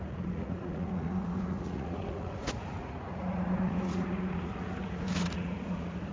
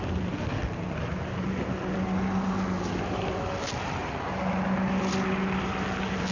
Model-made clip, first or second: first